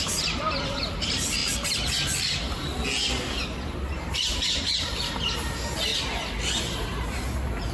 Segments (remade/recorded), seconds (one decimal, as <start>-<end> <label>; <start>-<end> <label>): 0.0-1.4 remade; 1.4-3.6 recorded; 3.6-5.9 remade; 5.9-6.6 recorded; 6.6-7.7 remade